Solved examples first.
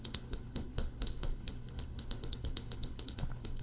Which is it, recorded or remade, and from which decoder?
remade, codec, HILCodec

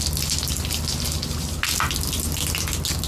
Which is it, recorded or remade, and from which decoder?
recorded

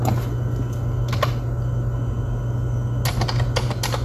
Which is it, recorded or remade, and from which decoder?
recorded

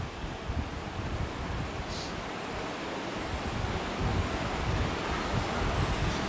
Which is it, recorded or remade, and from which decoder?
recorded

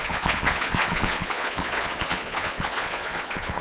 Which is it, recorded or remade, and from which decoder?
remade, vocoder, Vocos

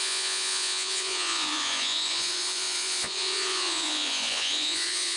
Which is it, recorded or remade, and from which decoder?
remade, vocoder, Vocos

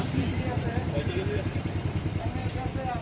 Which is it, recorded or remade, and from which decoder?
recorded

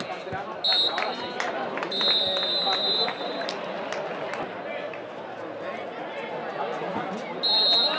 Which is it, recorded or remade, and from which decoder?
recorded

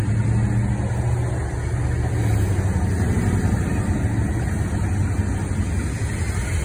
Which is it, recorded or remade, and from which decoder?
recorded